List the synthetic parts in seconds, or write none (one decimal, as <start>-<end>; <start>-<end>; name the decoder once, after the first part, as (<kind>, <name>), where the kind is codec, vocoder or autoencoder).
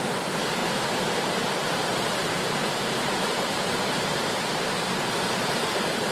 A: 0.6-1.4 (vocoder, BigVGAN v2); 2.2-5.6